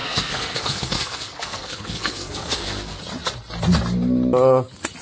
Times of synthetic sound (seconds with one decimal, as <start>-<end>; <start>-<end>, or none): 0.0-3.0